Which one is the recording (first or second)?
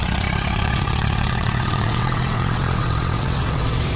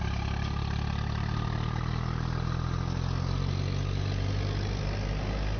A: second